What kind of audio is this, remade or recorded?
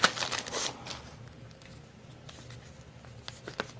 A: recorded